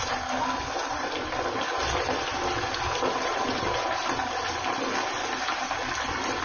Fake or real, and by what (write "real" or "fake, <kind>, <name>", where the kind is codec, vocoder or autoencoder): real